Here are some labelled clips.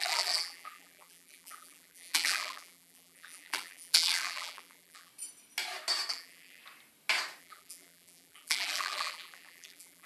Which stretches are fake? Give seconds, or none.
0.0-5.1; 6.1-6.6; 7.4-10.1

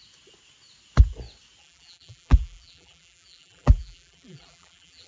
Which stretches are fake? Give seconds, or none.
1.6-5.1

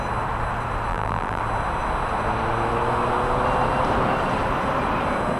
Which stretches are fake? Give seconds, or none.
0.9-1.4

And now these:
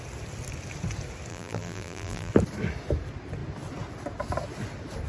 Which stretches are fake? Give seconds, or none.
1.3-2.3